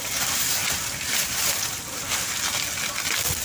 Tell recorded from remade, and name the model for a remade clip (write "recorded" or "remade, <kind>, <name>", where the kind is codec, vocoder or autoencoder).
recorded